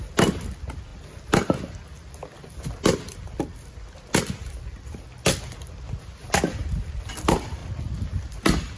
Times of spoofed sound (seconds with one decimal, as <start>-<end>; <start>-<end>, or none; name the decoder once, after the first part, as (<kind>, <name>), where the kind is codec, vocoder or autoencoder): none